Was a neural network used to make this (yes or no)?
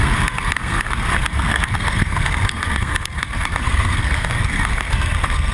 yes